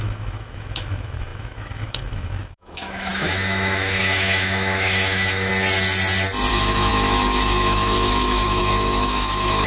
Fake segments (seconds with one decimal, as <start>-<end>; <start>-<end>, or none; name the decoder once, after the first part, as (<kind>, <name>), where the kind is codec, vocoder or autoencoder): 0.0-5.5 (autoencoder, DAC-VAE); 6.5-9.7